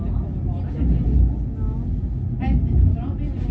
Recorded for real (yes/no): yes